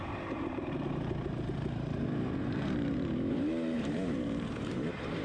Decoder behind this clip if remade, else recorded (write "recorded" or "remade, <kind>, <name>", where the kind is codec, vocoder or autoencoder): remade, vocoder, BigVGAN v2